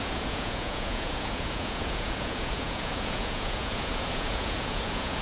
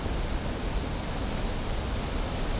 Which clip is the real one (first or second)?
second